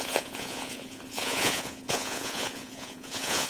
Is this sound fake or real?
fake